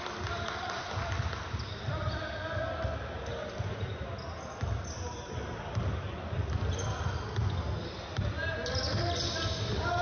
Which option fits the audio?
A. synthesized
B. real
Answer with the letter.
B